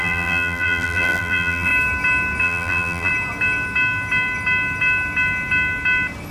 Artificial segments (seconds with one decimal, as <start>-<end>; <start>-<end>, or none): 0.0-1.7; 2.4-3.1